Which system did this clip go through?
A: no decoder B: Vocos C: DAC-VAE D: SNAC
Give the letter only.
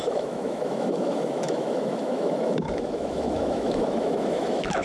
C